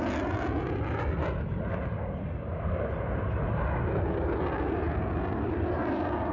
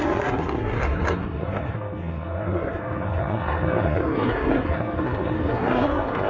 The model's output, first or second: second